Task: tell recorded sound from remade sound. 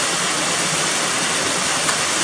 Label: recorded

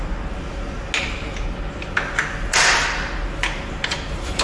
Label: recorded